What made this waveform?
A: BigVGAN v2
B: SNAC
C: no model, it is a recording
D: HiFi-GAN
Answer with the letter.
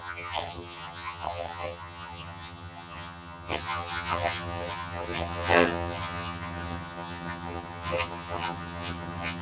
D